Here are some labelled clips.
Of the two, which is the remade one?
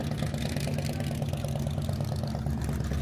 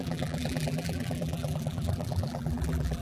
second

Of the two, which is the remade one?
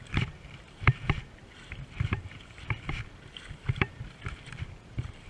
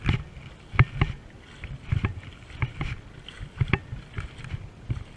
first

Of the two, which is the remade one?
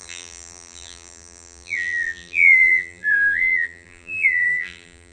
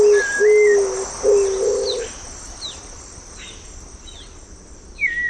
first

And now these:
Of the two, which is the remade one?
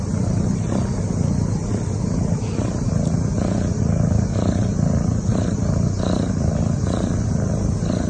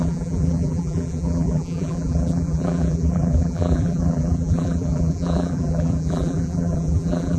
second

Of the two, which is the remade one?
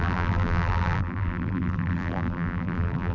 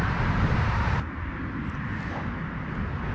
first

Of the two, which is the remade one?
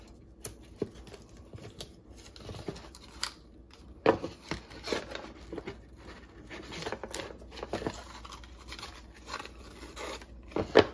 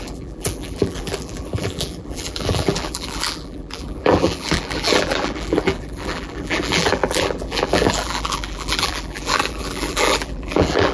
second